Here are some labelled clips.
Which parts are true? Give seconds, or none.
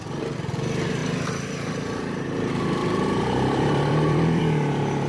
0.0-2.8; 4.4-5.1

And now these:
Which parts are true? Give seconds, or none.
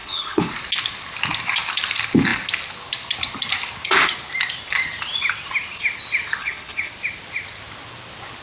0.5-6.4; 6.9-8.4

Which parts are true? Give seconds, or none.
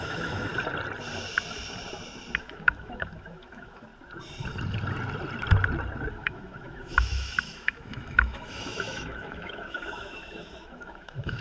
0.5-2.4; 3.9-6.1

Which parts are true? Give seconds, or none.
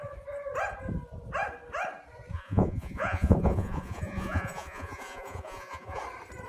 0.0-2.3; 6.0-6.5